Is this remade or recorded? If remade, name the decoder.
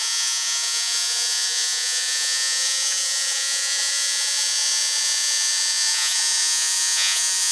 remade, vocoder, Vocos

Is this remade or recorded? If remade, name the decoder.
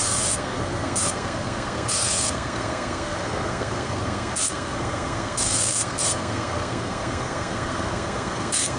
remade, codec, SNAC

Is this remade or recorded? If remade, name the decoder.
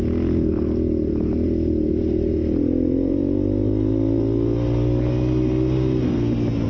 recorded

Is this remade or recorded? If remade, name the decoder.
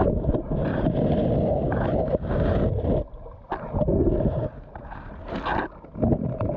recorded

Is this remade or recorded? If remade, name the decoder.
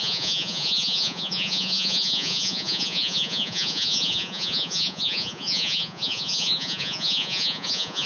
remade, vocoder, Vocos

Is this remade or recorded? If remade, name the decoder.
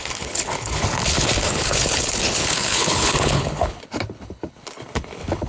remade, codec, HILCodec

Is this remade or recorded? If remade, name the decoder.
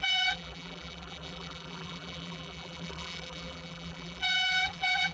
remade, vocoder, BigVGAN v2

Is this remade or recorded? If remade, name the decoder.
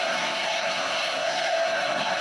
remade, codec, SNAC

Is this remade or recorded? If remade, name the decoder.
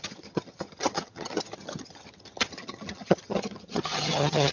remade, vocoder, HiFi-GAN